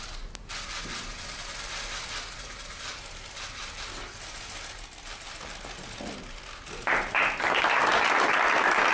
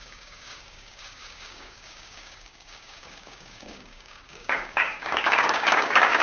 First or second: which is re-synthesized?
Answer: second